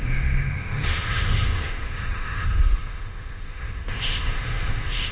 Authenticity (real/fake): fake